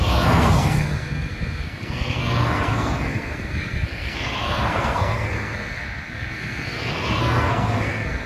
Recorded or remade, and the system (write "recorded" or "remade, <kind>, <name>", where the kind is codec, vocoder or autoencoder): remade, codec, SNAC